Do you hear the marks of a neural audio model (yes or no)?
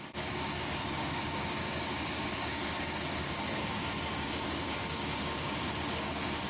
yes